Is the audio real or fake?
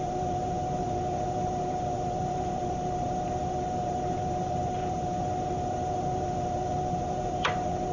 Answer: fake